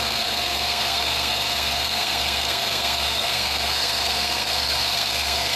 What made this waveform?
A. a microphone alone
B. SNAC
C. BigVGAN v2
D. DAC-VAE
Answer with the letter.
B